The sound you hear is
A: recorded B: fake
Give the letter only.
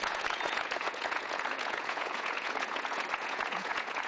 B